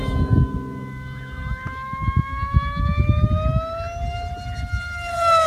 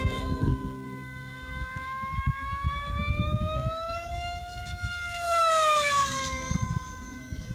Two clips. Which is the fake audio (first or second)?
second